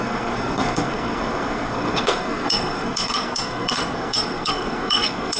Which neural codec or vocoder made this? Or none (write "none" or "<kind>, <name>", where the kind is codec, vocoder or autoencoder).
codec, SNAC